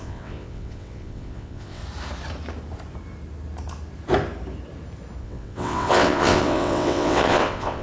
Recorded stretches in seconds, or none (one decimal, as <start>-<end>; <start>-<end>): 1.8-5.2